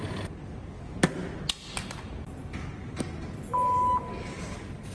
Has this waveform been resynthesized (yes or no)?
no